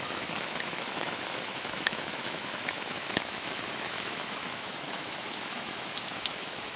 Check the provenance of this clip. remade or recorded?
remade